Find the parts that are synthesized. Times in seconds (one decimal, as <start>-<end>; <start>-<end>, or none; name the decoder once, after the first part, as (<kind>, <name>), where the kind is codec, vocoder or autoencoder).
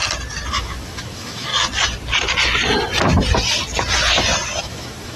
0.5-1.5 (autoencoder, DAC-VAE); 4.6-5.2